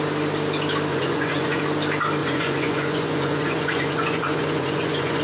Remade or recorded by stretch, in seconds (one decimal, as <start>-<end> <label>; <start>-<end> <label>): 0.0-0.9 recorded; 0.9-1.6 remade; 1.6-2.2 recorded; 2.2-5.2 remade